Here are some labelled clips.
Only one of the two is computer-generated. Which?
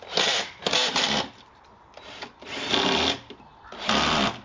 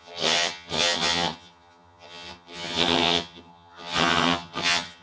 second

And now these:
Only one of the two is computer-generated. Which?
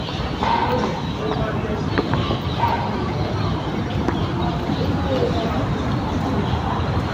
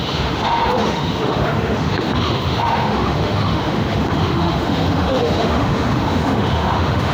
second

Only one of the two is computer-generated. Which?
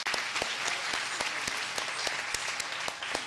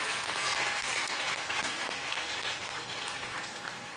second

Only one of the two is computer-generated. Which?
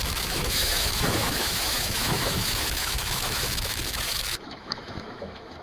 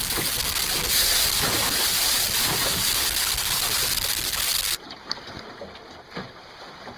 first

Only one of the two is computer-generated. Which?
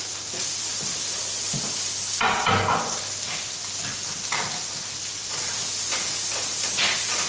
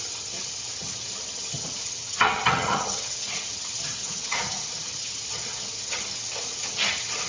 second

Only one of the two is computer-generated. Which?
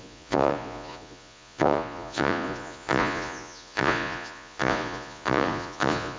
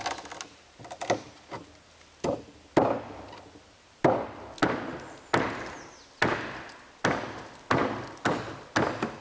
first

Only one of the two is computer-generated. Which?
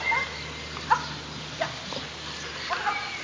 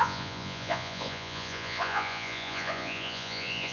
second